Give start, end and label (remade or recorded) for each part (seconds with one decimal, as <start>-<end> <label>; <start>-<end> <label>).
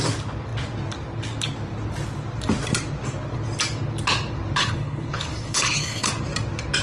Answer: 0.0-4.6 recorded; 4.6-6.1 remade; 6.1-6.8 recorded